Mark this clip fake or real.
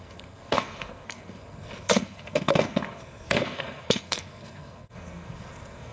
fake